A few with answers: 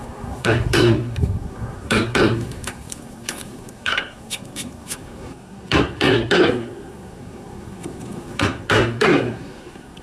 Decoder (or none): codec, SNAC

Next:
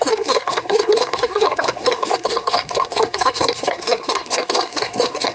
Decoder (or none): codec, SNAC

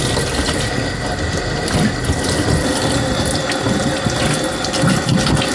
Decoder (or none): none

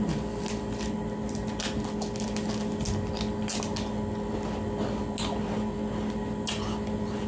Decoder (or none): none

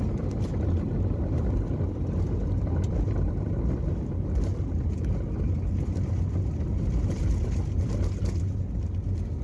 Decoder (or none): none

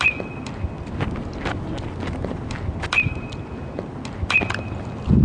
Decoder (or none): none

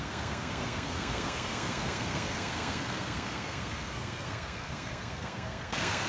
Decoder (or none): codec, SNAC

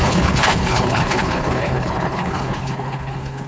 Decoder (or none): codec, HILCodec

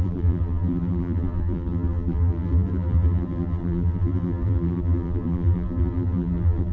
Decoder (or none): vocoder, BigVGAN v2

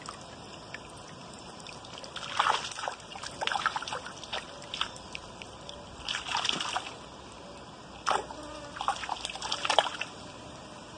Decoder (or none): none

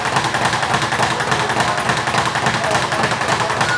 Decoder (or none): none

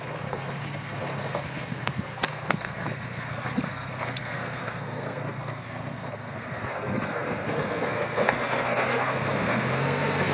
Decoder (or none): codec, SNAC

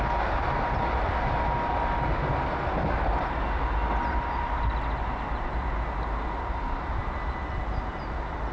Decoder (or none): none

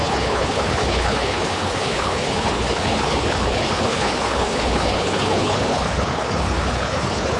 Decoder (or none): codec, HILCodec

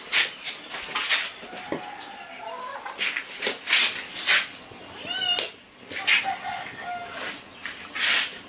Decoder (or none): none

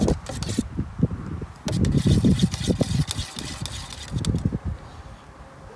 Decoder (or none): none